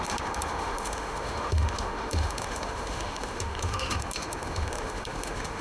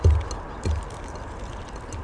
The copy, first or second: first